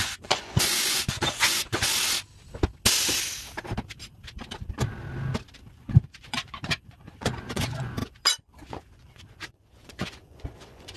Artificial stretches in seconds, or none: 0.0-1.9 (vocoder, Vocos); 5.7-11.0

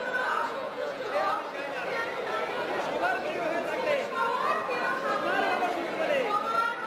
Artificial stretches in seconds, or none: 0.0-1.3 (vocoder, Vocos)

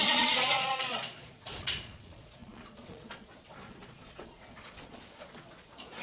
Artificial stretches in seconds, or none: 0.0-6.0 (vocoder, Vocos)

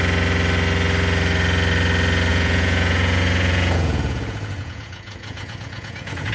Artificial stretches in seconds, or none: 2.3-6.3 (vocoder, Vocos)